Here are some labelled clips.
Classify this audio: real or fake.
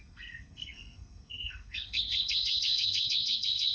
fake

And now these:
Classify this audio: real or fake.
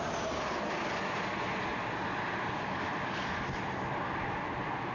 real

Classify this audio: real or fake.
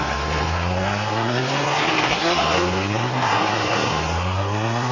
fake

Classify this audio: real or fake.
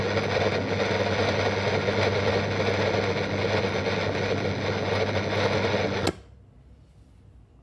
real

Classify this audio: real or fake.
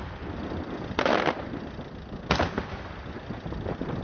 real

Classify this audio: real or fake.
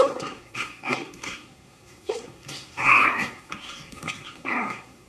fake